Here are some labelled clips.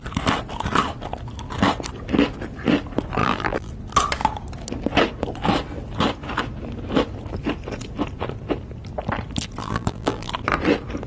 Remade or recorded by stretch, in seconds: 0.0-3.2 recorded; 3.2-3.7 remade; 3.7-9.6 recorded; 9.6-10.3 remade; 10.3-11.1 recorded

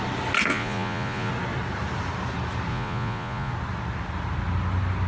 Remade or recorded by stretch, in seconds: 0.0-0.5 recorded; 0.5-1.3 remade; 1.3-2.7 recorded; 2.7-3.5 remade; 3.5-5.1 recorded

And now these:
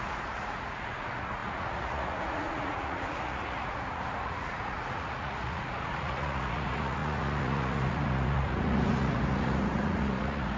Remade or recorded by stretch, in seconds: 0.0-10.6 remade

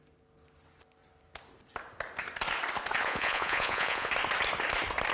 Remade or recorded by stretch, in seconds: 0.0-3.0 recorded; 3.0-4.1 remade; 4.1-5.1 recorded